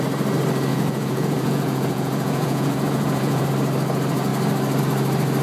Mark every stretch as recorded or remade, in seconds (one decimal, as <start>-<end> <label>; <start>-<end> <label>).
0.0-0.7 recorded; 0.7-3.5 remade; 3.5-5.4 recorded